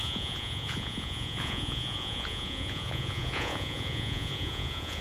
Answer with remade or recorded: remade